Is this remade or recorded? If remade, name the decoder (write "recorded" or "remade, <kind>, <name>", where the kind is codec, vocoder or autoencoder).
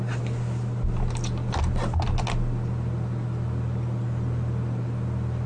recorded